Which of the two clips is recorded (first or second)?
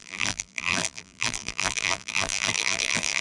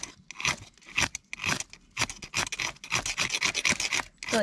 second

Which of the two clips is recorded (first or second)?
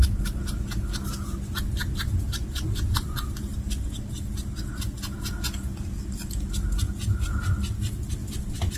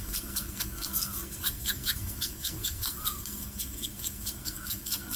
first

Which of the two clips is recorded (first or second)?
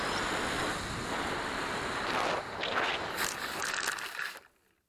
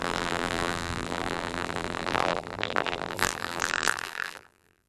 first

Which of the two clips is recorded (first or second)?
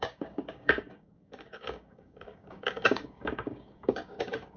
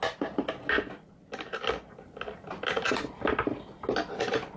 second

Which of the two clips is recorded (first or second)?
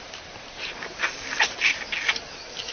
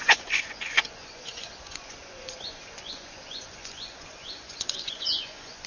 first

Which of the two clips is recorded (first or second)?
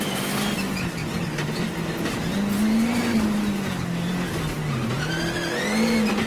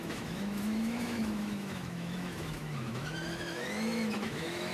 first